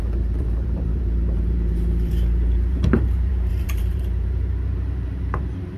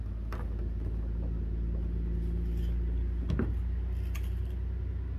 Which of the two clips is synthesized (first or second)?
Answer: first